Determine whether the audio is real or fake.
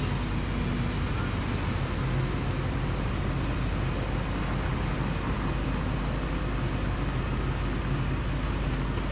real